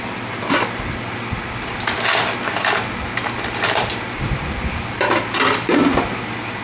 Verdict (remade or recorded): recorded